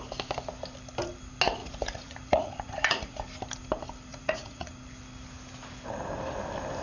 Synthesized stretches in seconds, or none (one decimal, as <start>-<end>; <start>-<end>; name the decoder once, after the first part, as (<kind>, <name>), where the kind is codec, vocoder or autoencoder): 1.6-3.2 (vocoder, Vocos); 4.1-4.7